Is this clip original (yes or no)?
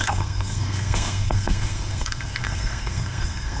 no